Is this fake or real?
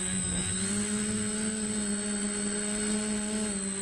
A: real